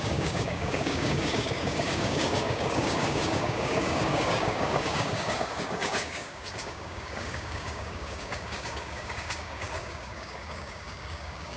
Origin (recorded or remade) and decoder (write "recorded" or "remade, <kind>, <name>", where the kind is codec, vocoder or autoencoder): remade, codec, DAC